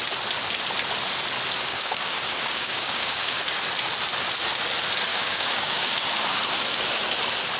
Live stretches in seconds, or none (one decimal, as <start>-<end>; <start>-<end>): 0.0-1.7; 3.4-5.1; 6.1-7.6